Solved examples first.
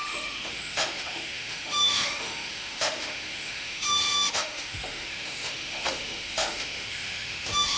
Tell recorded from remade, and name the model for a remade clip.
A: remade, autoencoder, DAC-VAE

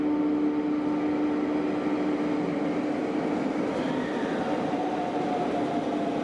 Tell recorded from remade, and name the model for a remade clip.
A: recorded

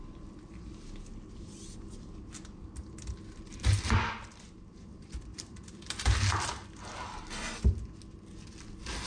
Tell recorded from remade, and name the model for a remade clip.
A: recorded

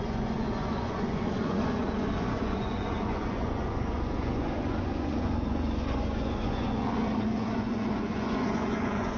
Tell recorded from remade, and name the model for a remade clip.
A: remade, vocoder, Vocos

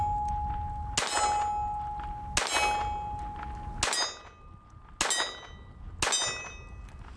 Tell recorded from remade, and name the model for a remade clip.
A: recorded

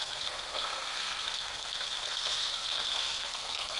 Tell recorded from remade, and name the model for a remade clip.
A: remade, codec, SNAC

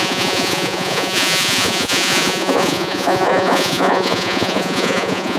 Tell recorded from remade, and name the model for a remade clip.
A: remade, vocoder, Vocos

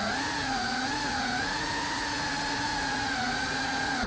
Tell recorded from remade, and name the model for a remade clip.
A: remade, vocoder, Vocos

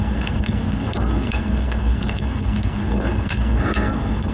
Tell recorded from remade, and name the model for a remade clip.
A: remade, codec, SNAC